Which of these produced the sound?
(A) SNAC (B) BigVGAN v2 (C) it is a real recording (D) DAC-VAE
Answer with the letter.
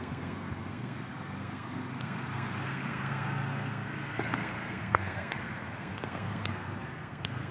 A